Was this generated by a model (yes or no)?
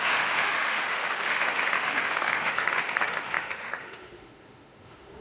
yes